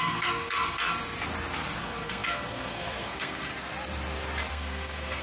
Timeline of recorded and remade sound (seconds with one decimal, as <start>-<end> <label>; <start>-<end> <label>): 0.0-0.9 remade; 0.9-1.8 recorded; 1.8-3.5 remade; 3.5-4.5 recorded; 4.5-5.2 remade